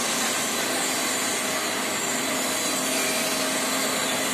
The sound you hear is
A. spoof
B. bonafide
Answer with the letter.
B